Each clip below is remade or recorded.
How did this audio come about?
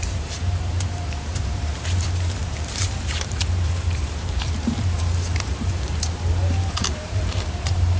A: remade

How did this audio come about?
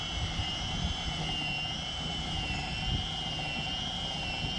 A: recorded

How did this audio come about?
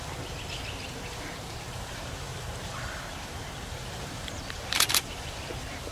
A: remade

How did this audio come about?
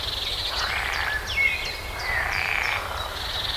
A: recorded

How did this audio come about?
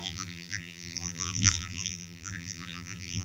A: remade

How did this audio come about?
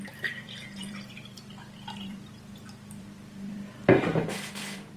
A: remade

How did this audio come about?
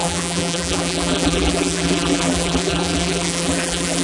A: remade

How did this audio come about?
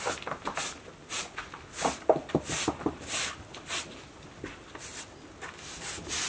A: recorded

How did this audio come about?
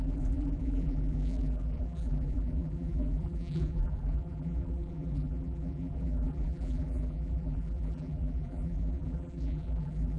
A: remade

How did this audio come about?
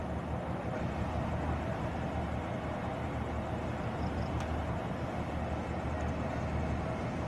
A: recorded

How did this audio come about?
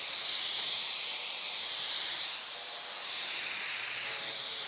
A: remade